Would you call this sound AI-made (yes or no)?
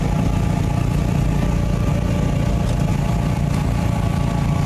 no